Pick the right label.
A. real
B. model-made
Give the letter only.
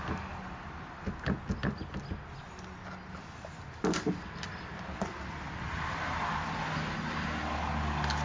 A